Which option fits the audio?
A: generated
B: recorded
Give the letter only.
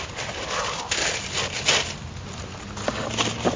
B